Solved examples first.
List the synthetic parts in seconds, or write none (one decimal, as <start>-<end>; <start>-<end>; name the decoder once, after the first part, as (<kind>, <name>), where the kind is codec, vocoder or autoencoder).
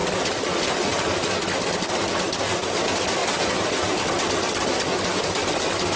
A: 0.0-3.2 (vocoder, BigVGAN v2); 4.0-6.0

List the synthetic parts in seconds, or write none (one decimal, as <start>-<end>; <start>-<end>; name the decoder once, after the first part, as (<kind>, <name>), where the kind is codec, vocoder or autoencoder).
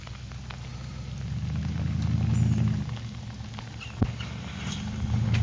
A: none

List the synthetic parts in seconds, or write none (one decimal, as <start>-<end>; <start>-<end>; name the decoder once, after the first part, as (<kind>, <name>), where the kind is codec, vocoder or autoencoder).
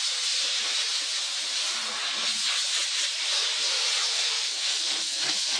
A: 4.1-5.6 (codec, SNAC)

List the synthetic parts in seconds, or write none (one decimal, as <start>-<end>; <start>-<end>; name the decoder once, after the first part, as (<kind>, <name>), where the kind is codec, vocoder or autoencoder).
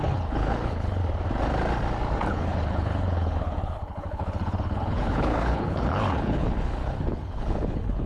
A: 0.0-1.0 (codec, HILCodec); 2.3-8.1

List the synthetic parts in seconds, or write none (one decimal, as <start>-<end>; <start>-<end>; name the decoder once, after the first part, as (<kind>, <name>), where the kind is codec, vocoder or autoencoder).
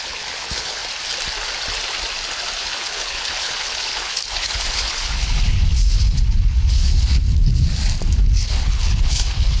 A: 0.0-0.8 (codec, HILCodec); 2.6-7.5; 8.2-9.6